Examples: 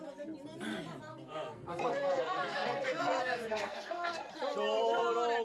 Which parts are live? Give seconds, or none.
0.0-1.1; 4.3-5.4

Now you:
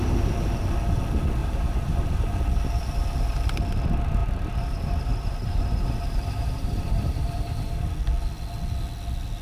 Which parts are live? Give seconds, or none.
0.0-1.4; 2.3-4.2; 7.9-9.4

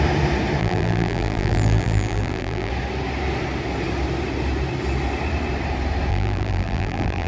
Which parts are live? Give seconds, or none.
0.0-0.6; 2.7-6.1

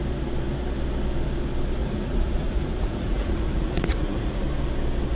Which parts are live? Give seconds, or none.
0.0-1.8; 4.4-5.1

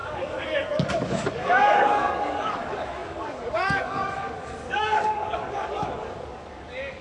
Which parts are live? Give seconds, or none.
none

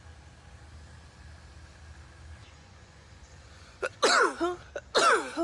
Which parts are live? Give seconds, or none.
0.0-2.4; 3.9-5.4

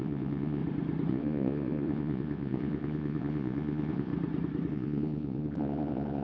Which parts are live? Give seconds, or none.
0.6-1.1; 4.1-4.7

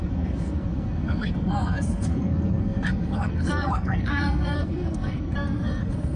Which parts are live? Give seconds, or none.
none